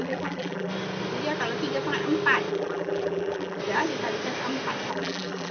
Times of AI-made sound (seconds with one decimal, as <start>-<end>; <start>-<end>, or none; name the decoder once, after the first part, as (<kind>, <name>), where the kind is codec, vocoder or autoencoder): 0.0-0.7 (vocoder, BigVGAN v2); 2.5-3.6; 4.9-5.5